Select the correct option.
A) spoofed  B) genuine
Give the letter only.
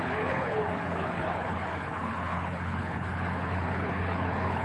A